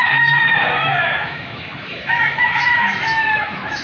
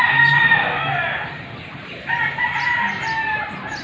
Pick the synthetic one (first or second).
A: first